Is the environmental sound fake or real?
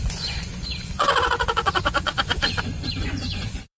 fake